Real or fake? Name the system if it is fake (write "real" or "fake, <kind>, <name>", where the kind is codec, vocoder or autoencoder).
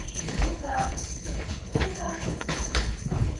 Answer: fake, codec, HILCodec